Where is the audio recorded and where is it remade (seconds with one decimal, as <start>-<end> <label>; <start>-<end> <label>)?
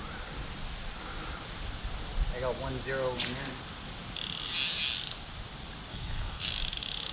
0.0-5.9 recorded; 5.9-6.5 remade; 6.5-7.1 recorded